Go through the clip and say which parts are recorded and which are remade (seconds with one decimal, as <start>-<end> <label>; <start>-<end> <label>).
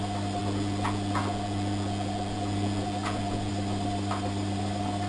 0.0-0.4 recorded; 0.4-3.5 remade; 3.5-5.1 recorded